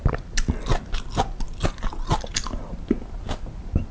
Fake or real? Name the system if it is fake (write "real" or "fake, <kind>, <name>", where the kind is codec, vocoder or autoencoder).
real